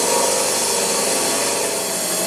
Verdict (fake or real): real